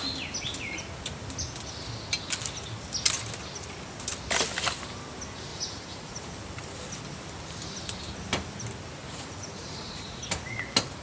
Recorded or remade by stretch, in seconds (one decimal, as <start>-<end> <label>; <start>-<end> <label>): 0.0-5.5 recorded; 5.5-6.3 remade; 6.3-9.1 recorded; 9.1-10.2 remade; 10.2-11.0 recorded